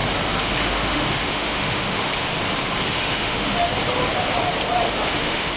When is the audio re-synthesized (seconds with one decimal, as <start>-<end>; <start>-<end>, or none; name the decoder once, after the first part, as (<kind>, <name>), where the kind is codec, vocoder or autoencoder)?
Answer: 0.6-2.1 (autoencoder, DAC-VAE); 2.9-3.7; 4.9-5.6